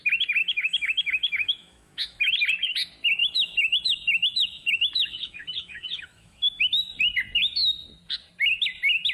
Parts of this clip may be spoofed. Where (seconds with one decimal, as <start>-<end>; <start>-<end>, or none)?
0.4-2.3; 3.2-6.6